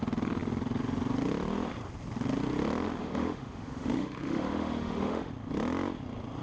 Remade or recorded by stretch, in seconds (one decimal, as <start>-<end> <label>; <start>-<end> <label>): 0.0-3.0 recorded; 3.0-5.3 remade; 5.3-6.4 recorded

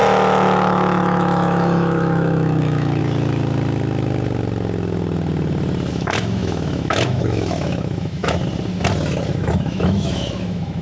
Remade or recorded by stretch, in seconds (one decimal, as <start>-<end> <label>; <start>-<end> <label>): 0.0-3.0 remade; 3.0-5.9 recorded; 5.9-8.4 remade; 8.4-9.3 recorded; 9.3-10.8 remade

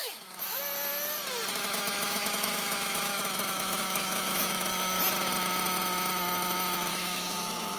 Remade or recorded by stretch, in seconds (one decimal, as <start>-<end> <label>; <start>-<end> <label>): 0.0-0.6 remade; 0.6-1.5 recorded; 1.5-5.0 remade; 5.0-6.9 recorded; 6.9-7.8 remade

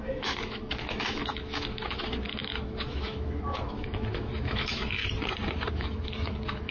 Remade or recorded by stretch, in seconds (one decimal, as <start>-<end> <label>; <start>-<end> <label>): 0.0-5.0 remade; 5.0-5.7 recorded; 5.7-6.7 remade